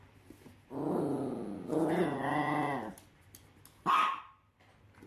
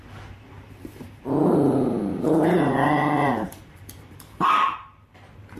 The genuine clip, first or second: first